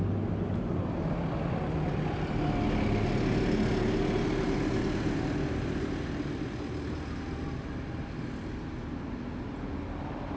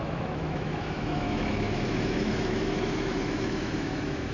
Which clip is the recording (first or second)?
first